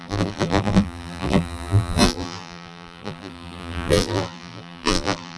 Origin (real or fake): fake